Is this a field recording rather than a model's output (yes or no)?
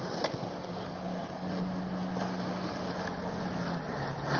yes